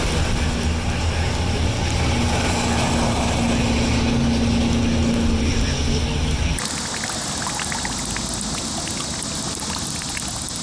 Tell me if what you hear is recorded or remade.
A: recorded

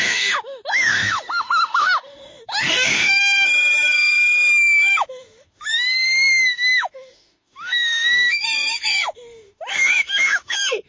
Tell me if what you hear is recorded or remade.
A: remade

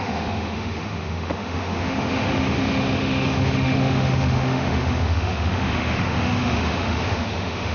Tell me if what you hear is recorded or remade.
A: remade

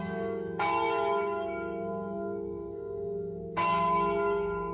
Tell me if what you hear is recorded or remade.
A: remade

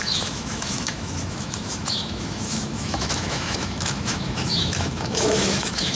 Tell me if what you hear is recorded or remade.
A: remade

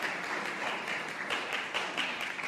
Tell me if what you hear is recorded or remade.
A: recorded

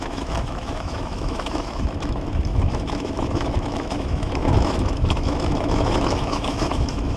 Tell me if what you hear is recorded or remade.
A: remade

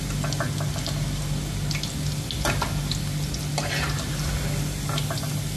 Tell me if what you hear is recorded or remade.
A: recorded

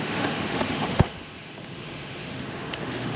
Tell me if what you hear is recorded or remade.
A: remade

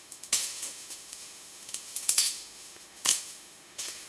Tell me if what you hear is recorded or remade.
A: remade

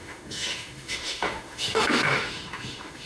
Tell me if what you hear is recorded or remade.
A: remade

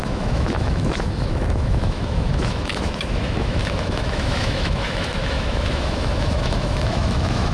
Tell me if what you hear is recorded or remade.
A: remade